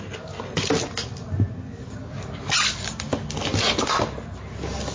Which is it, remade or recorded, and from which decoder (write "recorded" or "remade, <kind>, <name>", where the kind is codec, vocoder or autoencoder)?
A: recorded